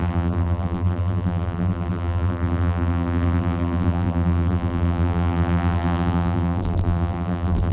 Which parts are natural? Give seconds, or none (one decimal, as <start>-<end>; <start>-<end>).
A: none